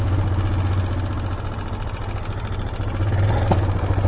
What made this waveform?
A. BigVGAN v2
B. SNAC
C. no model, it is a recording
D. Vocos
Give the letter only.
C